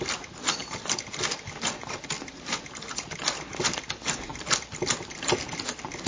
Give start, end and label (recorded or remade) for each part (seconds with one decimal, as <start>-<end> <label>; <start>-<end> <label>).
0.0-4.3 recorded; 4.3-6.1 remade

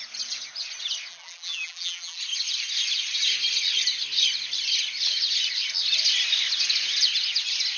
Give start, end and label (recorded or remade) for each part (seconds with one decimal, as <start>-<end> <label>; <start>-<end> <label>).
0.0-1.1 recorded; 1.1-2.2 remade; 2.2-7.8 recorded

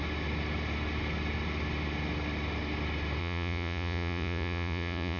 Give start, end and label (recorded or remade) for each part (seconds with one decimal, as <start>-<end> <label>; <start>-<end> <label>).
0.0-3.2 recorded; 3.2-5.2 remade

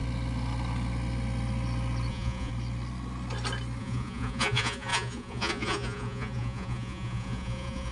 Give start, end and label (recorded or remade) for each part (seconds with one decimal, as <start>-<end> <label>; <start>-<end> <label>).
0.0-2.1 recorded; 2.1-2.5 remade; 2.5-3.8 recorded; 3.8-7.9 remade